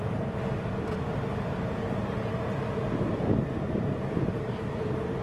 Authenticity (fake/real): real